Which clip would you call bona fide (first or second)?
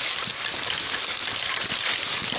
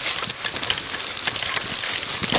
second